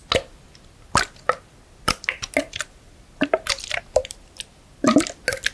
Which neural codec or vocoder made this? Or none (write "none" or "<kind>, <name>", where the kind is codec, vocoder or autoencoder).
none